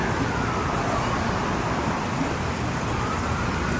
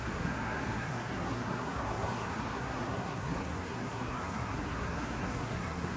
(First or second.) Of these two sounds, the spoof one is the second